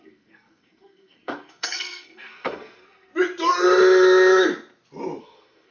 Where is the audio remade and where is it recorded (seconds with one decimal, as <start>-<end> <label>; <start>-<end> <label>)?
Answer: 0.0-3.1 remade; 3.1-5.2 recorded; 5.2-5.7 remade